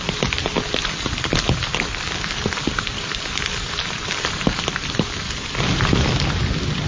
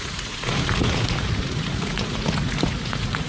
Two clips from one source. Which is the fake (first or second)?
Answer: second